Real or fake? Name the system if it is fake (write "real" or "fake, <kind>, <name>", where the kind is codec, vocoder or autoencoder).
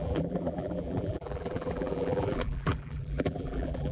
fake, vocoder, BigVGAN v2